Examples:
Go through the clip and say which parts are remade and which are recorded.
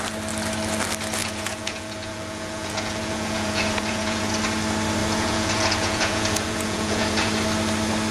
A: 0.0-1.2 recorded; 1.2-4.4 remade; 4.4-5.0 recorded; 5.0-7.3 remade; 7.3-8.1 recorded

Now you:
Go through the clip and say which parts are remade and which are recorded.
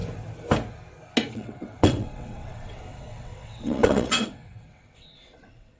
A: 0.0-1.3 recorded; 1.3-5.8 remade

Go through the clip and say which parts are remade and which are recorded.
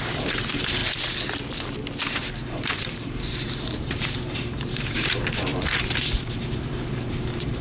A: 0.0-0.8 remade; 0.8-2.0 recorded; 2.0-7.6 remade